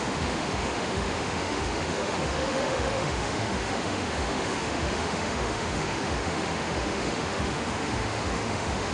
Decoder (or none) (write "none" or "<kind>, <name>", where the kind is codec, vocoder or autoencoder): autoencoder, DAC-VAE